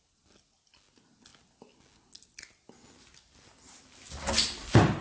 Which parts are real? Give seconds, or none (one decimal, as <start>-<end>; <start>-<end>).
0.0-5.0